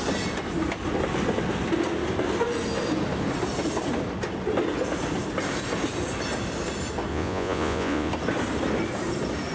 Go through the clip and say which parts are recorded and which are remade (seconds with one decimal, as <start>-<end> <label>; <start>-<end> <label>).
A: 0.0-7.1 recorded; 7.1-8.1 remade; 8.1-9.5 recorded